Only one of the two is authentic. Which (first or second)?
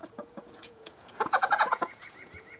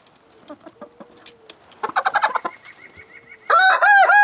second